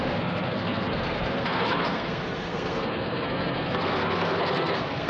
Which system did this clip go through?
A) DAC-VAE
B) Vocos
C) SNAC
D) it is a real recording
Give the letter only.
C